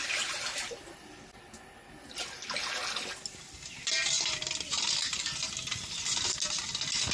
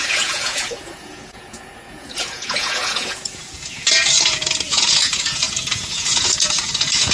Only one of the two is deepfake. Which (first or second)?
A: second